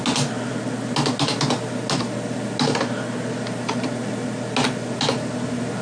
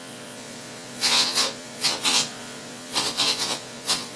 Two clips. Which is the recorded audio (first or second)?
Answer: first